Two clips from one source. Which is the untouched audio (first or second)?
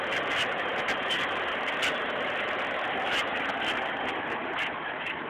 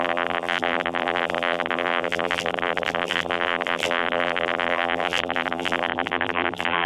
first